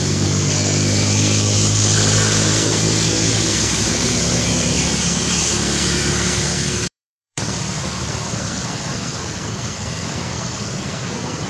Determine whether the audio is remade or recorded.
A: remade